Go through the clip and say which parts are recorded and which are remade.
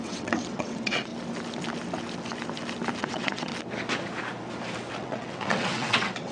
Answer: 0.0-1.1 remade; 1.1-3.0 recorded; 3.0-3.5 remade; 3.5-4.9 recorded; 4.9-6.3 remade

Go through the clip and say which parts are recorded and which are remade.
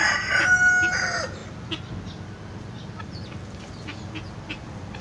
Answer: 0.0-5.0 recorded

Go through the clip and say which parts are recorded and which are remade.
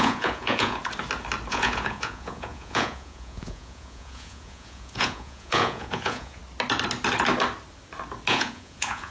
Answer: 0.0-0.8 remade; 0.8-1.5 recorded; 1.5-6.4 remade; 6.4-8.3 recorded; 8.3-9.1 remade